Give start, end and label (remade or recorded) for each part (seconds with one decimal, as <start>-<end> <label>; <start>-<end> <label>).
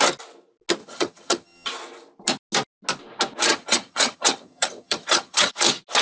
0.0-0.8 recorded; 0.8-1.7 remade; 1.7-3.5 recorded; 3.5-5.5 remade; 5.5-6.0 recorded